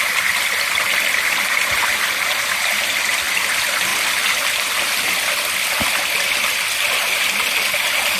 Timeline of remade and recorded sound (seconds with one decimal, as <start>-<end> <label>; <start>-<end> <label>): 0.0-8.2 recorded